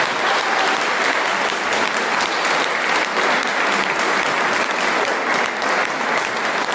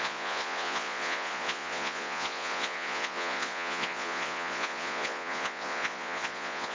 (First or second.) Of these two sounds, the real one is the first